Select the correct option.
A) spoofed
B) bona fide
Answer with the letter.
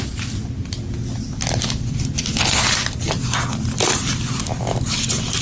B